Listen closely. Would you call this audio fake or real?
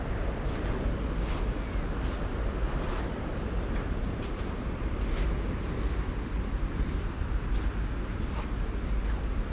real